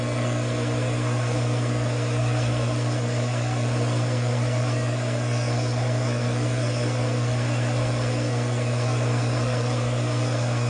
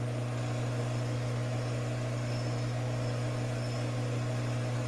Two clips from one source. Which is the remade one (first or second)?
first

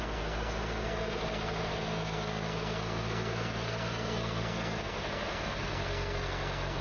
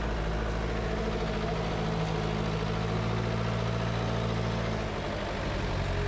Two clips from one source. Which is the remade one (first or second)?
first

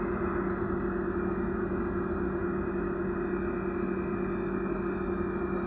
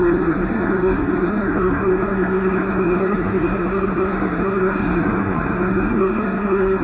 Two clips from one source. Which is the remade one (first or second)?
second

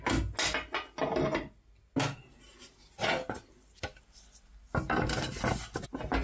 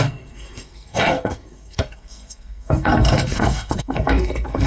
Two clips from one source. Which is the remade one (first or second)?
second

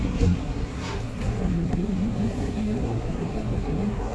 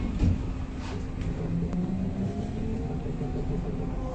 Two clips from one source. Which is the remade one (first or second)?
first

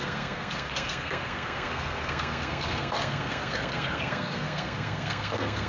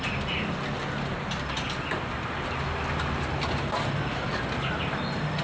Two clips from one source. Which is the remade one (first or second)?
first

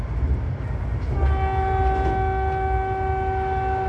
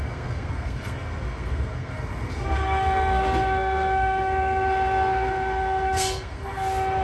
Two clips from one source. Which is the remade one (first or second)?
second